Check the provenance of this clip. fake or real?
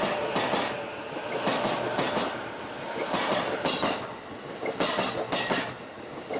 real